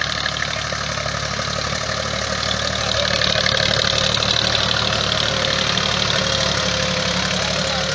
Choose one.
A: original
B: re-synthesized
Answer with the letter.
A